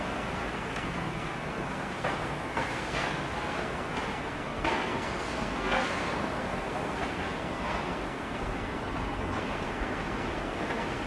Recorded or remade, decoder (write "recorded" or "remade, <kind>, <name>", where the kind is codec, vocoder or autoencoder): remade, codec, SNAC